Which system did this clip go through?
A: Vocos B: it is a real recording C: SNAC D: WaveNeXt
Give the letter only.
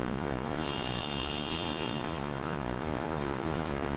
A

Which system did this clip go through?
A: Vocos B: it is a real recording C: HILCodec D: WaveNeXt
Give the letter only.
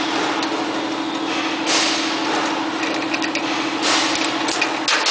B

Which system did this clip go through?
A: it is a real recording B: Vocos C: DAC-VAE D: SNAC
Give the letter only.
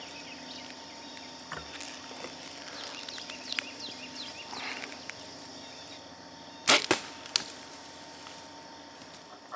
A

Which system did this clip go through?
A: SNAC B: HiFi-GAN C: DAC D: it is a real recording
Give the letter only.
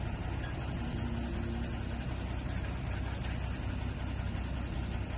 D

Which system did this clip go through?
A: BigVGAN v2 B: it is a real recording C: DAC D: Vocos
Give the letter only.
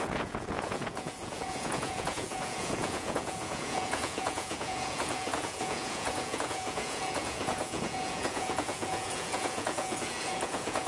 D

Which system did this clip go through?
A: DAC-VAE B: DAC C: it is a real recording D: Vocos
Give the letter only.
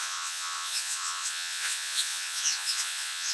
D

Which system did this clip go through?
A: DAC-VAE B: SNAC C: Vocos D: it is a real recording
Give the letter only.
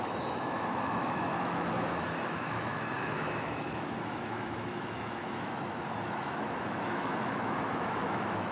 A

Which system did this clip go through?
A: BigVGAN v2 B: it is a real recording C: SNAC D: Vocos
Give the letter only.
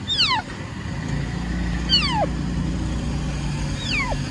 B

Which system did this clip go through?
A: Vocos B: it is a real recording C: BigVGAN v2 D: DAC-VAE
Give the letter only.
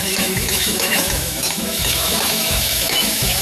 D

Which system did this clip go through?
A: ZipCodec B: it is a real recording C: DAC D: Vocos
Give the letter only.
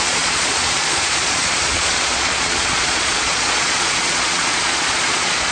D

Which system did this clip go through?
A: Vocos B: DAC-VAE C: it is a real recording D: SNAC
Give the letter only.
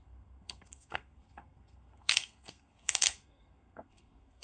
D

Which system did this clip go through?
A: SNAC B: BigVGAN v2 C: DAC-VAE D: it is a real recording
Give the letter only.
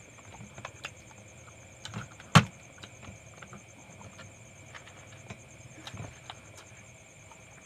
D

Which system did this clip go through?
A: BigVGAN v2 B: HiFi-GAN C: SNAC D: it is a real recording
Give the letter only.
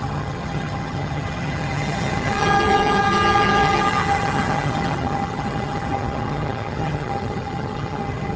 B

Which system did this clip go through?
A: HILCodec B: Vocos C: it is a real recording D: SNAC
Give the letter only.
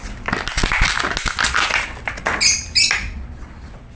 C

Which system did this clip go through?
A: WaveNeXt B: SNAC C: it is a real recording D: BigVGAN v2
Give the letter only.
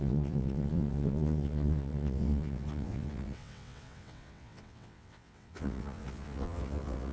A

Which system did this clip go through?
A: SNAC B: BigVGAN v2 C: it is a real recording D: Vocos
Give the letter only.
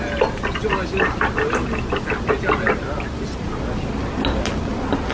C